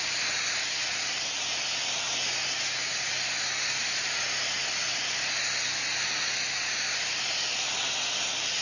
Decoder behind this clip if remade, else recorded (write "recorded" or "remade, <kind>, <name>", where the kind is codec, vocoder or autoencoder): recorded